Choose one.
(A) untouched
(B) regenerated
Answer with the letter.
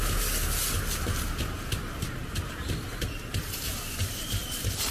A